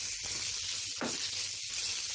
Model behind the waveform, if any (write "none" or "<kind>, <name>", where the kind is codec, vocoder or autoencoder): none